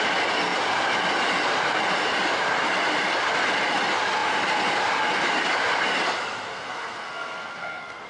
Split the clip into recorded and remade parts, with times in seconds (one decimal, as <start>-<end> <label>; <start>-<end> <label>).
0.0-6.5 recorded; 6.5-8.1 remade